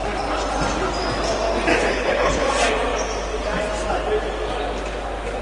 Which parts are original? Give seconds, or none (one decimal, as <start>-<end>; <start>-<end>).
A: 0.0-1.9; 2.5-5.4